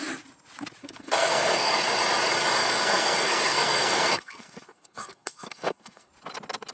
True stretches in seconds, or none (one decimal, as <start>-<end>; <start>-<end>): 0.0-0.8; 1.8-2.6; 6.1-6.7